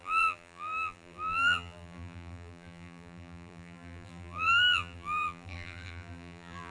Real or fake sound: fake